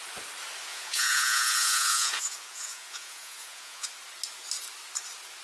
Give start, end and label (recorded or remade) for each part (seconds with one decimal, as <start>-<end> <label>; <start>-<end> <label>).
0.0-0.7 recorded; 0.7-3.9 remade; 3.9-5.4 recorded